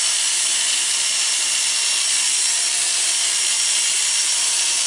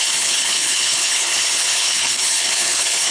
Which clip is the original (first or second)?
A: first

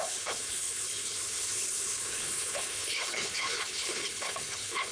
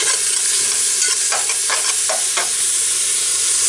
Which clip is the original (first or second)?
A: second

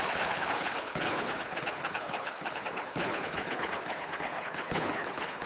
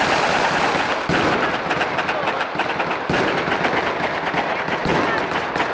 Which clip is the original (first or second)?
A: second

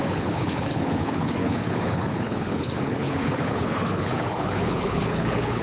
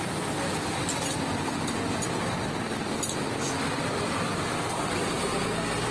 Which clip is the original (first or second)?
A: second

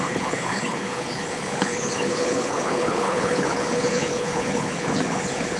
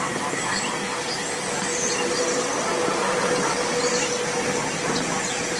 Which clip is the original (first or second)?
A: second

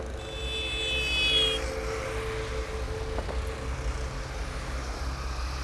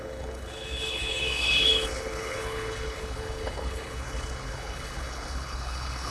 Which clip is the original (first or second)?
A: first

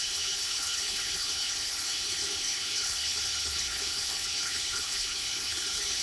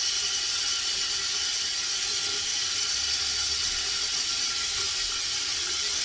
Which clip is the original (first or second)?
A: second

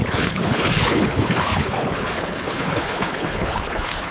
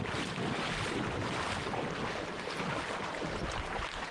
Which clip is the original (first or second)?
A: second